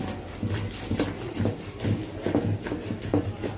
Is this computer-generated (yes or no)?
no